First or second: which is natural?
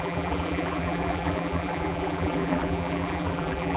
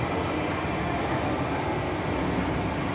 second